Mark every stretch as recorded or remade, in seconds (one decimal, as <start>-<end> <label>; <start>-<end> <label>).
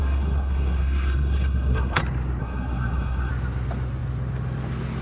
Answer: 0.0-2.0 remade; 2.0-2.4 recorded; 2.4-3.3 remade; 3.3-5.0 recorded